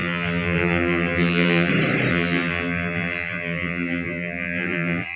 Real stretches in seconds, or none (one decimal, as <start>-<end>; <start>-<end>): 1.7-2.1